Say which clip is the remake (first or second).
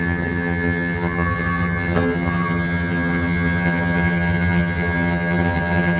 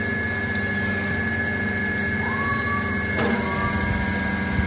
first